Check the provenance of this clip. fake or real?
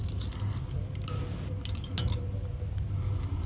real